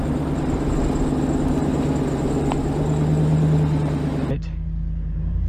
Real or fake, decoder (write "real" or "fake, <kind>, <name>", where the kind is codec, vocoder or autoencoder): real